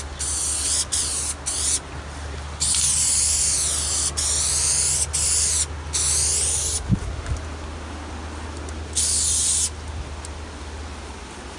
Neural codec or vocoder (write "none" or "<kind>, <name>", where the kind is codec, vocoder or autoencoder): none